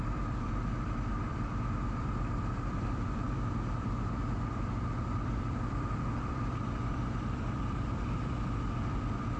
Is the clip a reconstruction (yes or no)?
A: yes